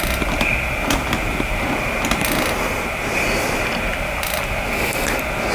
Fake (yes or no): no